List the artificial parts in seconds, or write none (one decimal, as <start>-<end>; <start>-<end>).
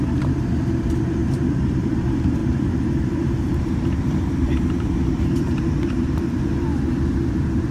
0.0-6.7; 7.3-7.7